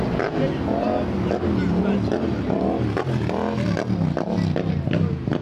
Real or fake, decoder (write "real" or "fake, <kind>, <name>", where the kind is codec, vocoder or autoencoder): real